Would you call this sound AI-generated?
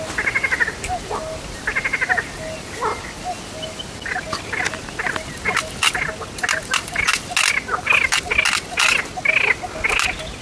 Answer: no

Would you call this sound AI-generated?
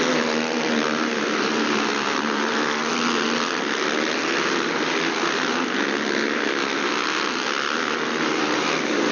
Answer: no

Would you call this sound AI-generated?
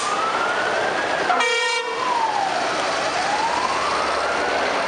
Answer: no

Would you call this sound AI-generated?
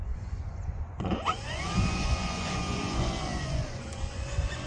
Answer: yes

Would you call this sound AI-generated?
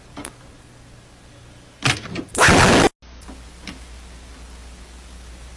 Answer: no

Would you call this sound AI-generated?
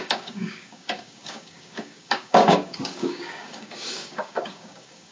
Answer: yes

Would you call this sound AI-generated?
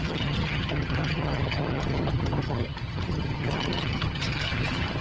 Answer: yes